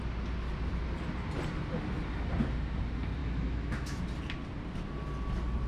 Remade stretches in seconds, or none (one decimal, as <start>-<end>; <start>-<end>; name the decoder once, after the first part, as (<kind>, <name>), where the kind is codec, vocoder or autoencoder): 3.2-4.0 (autoencoder, DAC-VAE)